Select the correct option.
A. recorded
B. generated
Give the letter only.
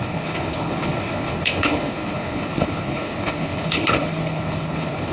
B